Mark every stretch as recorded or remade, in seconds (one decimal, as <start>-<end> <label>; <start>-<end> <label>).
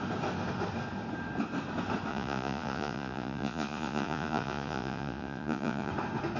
0.0-2.1 recorded; 2.1-5.9 remade; 5.9-6.4 recorded